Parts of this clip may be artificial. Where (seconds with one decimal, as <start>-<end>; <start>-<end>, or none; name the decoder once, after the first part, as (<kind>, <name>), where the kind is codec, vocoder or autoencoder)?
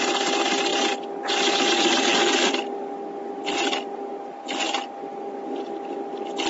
none